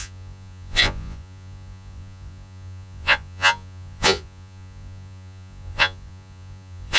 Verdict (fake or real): fake